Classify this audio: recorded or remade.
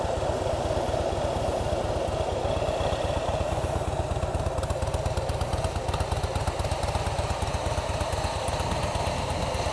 recorded